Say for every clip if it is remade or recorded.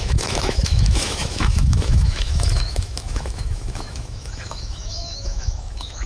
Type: remade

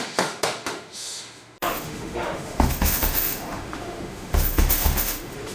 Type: remade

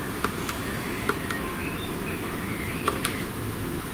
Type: remade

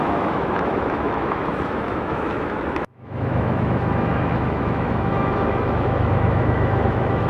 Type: remade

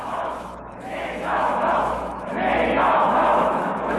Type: remade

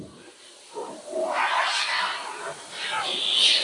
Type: recorded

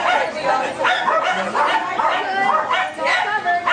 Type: recorded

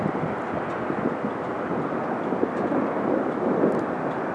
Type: recorded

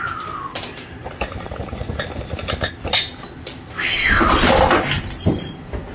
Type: recorded